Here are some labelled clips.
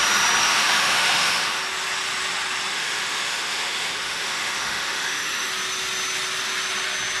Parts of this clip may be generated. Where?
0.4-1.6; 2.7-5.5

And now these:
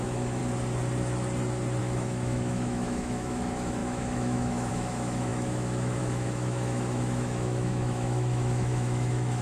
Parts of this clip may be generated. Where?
0.0-0.4; 1.8-9.4

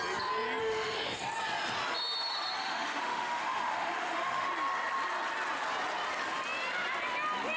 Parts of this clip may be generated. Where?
0.6-1.2; 2.6-4.5

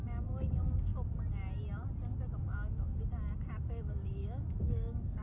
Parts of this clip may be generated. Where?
0.0-0.9; 3.7-5.2

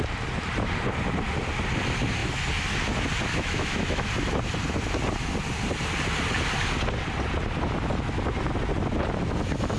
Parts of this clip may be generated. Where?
3.3-4.1

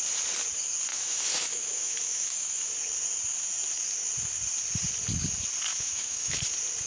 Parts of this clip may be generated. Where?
0.9-2.7; 5.7-6.4

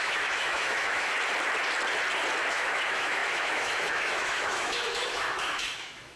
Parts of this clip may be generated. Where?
0.0-1.1; 2.5-6.2

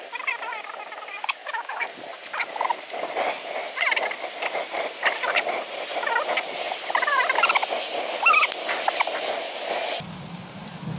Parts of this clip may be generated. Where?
1.4-1.9